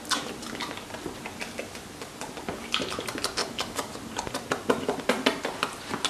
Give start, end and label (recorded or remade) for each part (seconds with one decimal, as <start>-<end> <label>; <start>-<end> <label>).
0.0-3.4 recorded; 3.4-3.9 remade; 3.9-6.1 recorded